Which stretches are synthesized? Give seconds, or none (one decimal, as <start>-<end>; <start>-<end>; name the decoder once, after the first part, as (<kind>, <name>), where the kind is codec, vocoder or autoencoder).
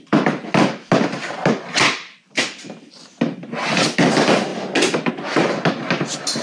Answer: none